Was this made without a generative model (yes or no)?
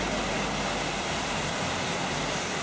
yes